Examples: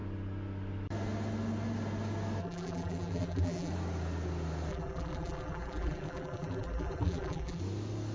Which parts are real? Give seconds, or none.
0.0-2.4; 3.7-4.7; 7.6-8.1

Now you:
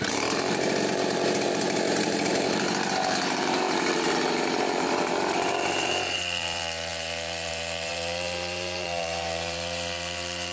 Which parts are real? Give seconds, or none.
none

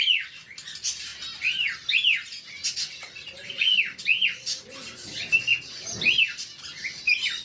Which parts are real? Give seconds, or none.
1.1-3.6; 5.5-6.2

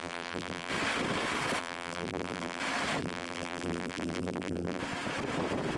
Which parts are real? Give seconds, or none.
0.7-1.6; 2.6-3.0; 4.8-5.8

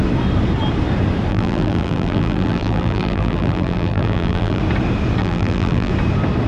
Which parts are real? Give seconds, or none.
0.0-1.3; 4.6-5.2; 5.9-6.5

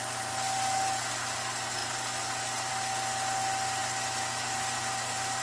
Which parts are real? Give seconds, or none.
0.0-1.8; 2.7-5.4